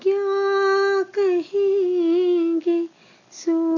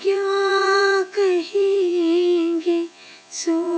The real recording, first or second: first